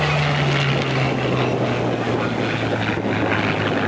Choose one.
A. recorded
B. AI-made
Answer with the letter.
A